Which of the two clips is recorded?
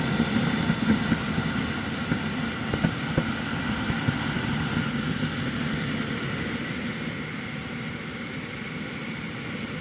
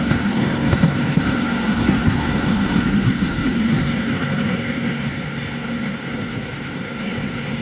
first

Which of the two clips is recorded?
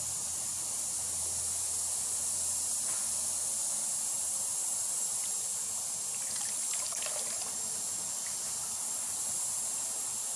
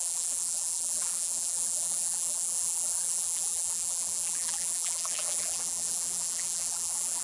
first